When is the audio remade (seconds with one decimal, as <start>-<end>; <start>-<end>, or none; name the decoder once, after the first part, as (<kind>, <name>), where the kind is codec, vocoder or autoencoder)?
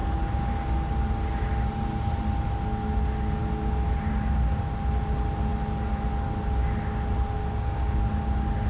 7.4-8.0 (codec, DAC)